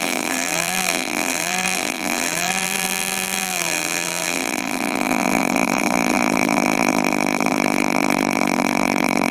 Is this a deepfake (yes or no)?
yes